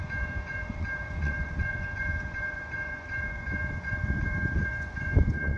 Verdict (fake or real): fake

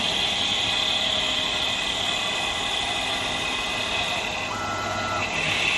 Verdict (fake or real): real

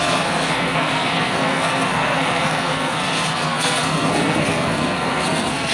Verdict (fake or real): fake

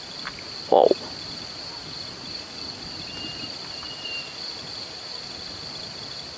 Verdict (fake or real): real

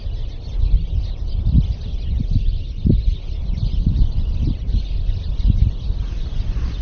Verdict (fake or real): real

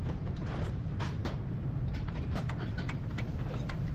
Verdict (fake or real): fake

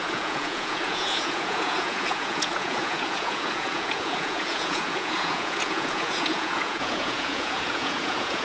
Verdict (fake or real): fake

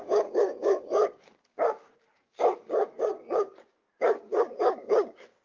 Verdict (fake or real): fake